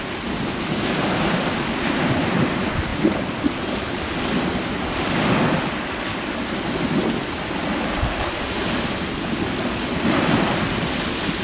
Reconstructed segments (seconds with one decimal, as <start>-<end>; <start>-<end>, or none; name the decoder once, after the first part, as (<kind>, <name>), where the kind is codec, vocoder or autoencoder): none